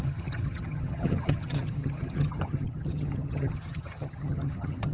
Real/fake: fake